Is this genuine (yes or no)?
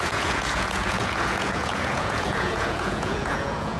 no